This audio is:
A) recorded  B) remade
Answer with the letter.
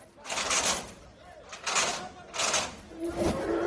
A